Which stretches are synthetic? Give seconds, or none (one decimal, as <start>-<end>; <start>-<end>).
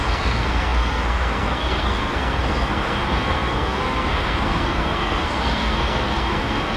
0.0-6.8